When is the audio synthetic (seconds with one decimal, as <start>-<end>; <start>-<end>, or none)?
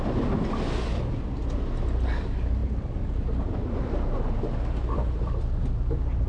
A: none